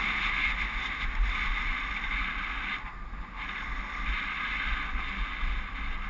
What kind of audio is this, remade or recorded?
recorded